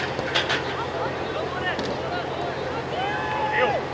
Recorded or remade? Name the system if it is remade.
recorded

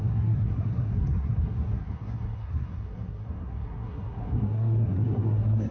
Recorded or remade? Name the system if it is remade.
remade, codec, SNAC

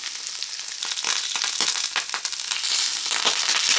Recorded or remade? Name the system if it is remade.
recorded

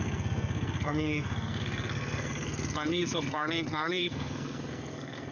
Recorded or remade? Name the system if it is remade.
remade, codec, SNAC